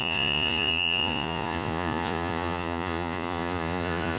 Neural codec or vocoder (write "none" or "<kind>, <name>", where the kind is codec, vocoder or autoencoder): vocoder, Vocos